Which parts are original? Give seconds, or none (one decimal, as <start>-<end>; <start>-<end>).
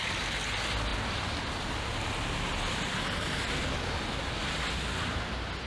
0.0-5.7